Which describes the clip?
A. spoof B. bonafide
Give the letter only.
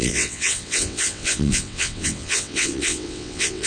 A